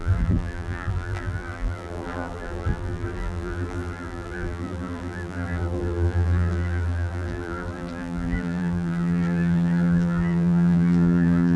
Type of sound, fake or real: fake